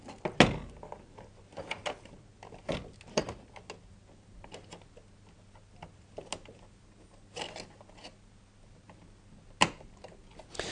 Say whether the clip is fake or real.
real